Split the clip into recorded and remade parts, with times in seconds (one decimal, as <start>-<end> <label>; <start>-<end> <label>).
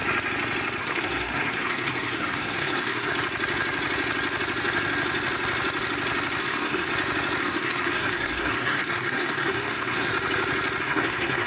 0.0-0.8 recorded; 0.8-3.1 remade; 3.1-6.4 recorded; 6.4-6.9 remade; 6.9-7.4 recorded; 7.4-10.1 remade; 10.1-10.8 recorded; 10.8-11.5 remade